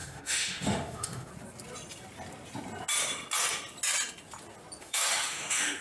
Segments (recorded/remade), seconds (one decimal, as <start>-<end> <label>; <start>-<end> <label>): 0.0-1.3 remade; 1.3-4.8 recorded; 4.8-5.8 remade